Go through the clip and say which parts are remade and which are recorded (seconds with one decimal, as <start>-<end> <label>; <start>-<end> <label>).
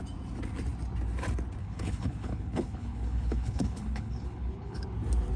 0.0-1.6 recorded; 1.6-4.8 remade; 4.8-5.4 recorded